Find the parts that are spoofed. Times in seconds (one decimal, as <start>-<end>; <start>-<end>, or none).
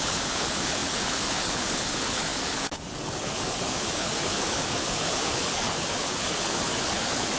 0.0-7.4